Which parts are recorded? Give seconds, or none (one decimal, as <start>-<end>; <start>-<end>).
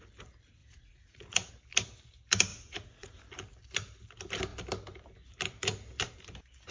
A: 0.0-0.6; 1.5-2.5; 3.2-6.7